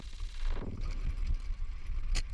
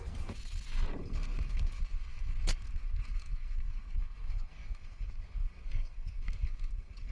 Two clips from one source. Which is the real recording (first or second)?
first